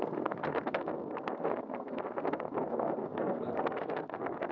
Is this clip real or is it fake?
fake